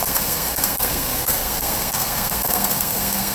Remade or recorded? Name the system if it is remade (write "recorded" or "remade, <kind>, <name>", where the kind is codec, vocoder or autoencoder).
remade, codec, SNAC